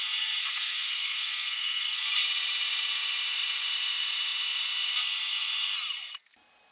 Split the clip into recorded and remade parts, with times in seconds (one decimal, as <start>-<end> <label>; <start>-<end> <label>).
0.0-0.4 recorded; 0.4-2.0 remade; 2.0-6.7 recorded